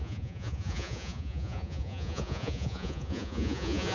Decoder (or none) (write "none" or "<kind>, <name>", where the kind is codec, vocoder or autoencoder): vocoder, Vocos